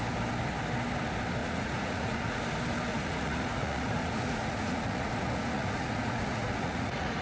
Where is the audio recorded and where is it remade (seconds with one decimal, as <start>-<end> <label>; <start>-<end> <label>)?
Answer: 0.0-1.4 recorded; 1.4-2.4 remade; 2.4-2.9 recorded; 2.9-7.2 remade